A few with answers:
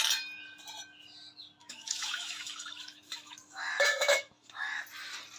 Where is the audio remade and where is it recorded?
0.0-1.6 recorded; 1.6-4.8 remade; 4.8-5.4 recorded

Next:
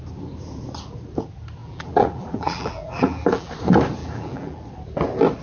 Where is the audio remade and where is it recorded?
0.0-1.6 recorded; 1.6-3.5 remade; 3.5-4.0 recorded; 4.0-4.6 remade; 4.6-5.4 recorded

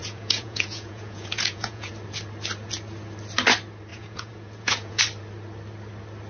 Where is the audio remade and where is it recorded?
0.0-1.9 remade; 1.9-3.9 recorded; 3.9-5.0 remade; 5.0-6.3 recorded

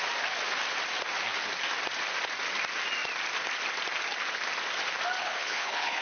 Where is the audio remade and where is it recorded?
0.0-5.2 recorded; 5.2-6.0 remade

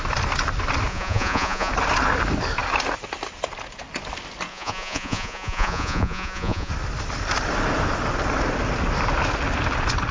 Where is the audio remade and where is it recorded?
0.0-0.9 recorded; 0.9-1.7 remade; 1.7-4.5 recorded; 4.5-6.7 remade; 6.7-10.1 recorded

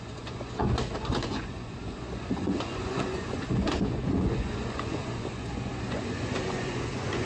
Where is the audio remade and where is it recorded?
0.0-7.3 remade